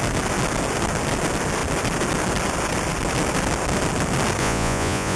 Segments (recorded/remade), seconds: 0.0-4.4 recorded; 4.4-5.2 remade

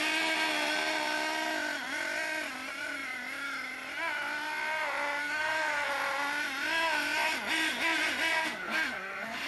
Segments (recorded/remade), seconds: 0.0-5.2 recorded; 5.2-5.9 remade; 5.9-8.4 recorded; 8.4-9.5 remade

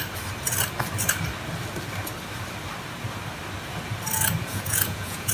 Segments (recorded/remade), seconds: 0.0-4.5 recorded; 4.5-5.3 remade

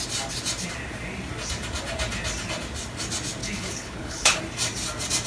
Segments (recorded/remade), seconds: 0.0-3.4 recorded; 3.4-4.4 remade; 4.4-5.3 recorded

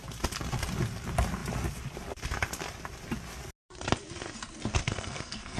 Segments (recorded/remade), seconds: 0.0-4.8 recorded; 4.8-5.6 remade

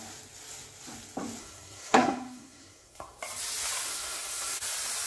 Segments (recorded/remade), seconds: 0.0-1.4 recorded; 1.4-3.2 remade; 3.2-3.9 recorded; 3.9-4.6 remade; 4.6-5.1 recorded

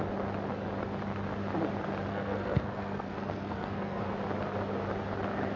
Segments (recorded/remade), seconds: 0.0-2.1 recorded; 2.1-4.1 remade; 4.1-5.6 recorded